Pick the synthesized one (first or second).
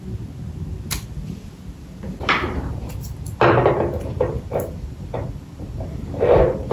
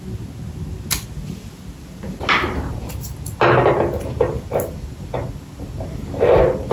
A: first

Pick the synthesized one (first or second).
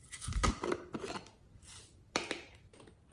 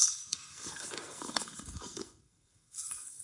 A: second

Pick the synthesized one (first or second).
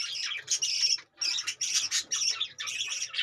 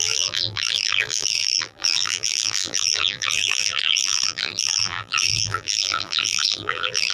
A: second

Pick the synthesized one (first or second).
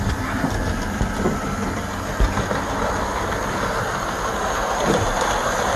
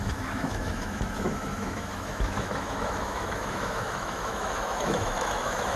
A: second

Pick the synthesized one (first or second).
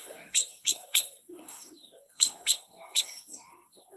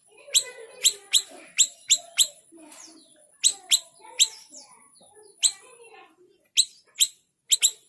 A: first